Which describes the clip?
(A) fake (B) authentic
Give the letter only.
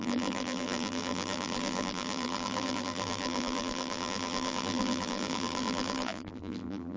A